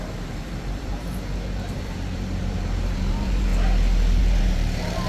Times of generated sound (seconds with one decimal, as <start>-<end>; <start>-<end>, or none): 0.0-3.5; 4.2-5.1